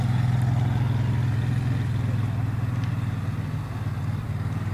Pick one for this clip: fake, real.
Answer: real